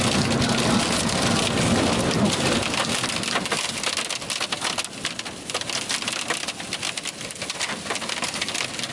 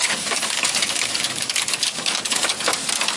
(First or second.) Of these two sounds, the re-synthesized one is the second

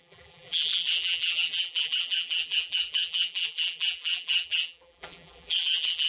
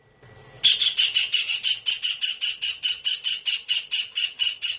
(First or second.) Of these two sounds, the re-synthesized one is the first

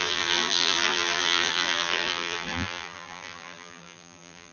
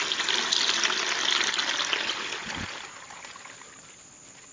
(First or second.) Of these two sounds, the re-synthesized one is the first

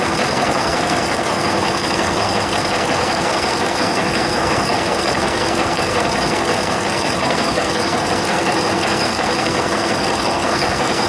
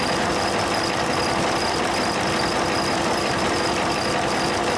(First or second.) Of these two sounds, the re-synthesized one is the first